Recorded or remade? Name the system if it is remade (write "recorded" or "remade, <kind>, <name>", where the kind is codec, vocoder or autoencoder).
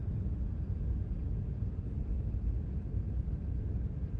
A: recorded